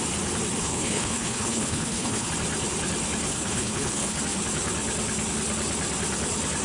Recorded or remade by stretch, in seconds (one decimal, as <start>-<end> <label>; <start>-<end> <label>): 0.0-0.6 recorded; 0.6-2.3 remade; 2.3-3.3 recorded; 3.3-4.2 remade; 4.2-6.6 recorded